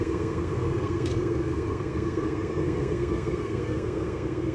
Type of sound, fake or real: fake